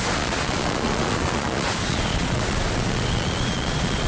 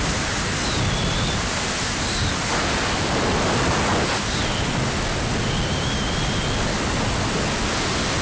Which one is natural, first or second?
second